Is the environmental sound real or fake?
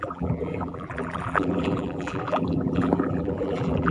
fake